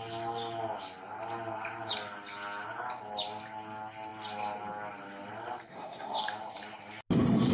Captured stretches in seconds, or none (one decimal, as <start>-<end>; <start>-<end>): 0.0-5.7; 6.2-7.5

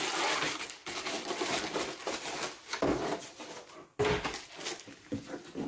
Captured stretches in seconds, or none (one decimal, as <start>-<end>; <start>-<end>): 0.0-5.7

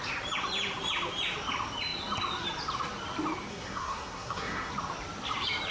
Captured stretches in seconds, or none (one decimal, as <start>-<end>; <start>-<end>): 0.0-3.5; 4.7-5.7

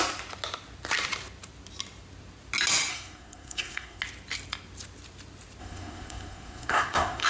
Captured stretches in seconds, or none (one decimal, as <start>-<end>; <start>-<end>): 0.0-2.9; 4.0-5.6

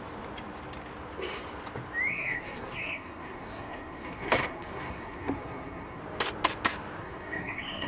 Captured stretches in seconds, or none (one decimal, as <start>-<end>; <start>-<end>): 0.0-2.1; 6.0-7.0

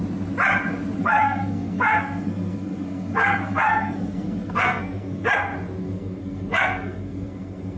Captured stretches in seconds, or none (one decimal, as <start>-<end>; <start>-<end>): 0.0-1.0; 5.3-5.8

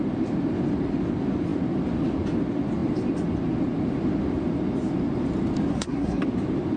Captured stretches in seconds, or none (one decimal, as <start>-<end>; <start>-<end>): 0.0-5.7; 6.2-6.8

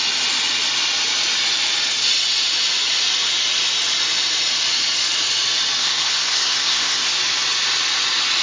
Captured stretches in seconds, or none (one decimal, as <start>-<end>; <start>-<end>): 0.0-5.8; 7.2-8.4